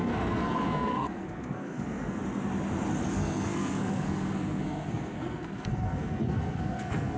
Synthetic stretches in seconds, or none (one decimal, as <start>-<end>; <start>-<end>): 0.0-2.2; 3.1-7.2

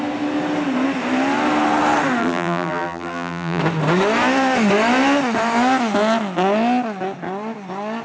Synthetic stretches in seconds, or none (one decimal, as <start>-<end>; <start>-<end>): 2.2-3.6